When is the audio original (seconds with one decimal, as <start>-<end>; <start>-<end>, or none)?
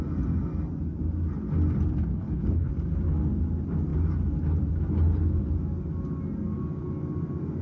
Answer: 0.0-2.1; 2.7-7.6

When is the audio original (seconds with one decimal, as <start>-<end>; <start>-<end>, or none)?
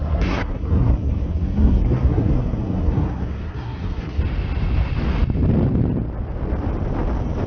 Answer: 4.2-7.5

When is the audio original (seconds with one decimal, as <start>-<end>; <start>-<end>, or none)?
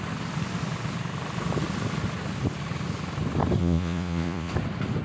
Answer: 0.0-3.6; 4.5-5.0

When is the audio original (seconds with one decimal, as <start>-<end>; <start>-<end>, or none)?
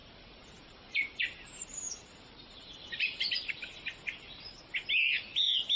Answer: 3.5-5.8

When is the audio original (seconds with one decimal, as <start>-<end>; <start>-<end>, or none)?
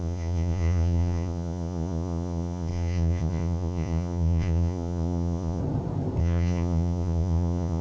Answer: 5.6-6.2